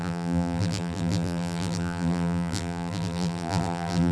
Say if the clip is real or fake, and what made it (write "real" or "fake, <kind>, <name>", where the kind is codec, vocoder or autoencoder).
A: fake, vocoder, BigVGAN v2